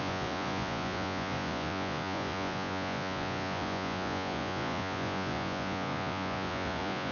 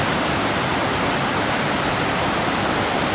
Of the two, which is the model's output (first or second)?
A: first